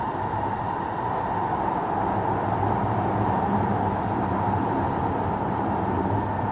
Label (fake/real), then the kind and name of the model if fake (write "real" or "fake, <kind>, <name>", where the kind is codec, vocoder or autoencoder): real